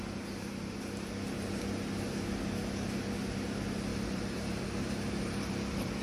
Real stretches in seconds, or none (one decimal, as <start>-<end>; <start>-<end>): 0.0-3.9; 5.5-6.0